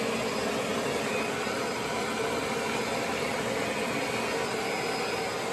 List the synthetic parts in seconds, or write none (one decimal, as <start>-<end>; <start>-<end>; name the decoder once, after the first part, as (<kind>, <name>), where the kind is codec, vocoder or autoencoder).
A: 0.7-4.0 (vocoder, BigVGAN v2)